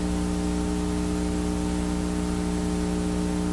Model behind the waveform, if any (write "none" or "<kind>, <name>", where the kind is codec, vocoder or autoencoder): none